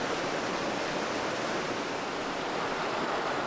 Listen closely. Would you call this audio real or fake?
real